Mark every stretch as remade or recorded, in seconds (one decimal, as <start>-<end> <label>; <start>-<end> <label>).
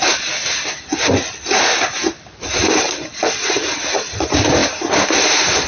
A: 0.0-5.7 recorded